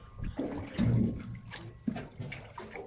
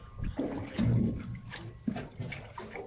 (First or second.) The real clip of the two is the first